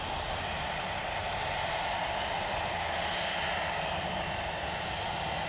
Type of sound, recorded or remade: recorded